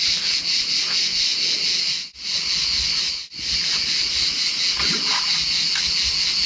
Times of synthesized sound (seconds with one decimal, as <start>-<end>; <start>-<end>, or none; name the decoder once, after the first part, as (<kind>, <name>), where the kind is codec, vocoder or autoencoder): none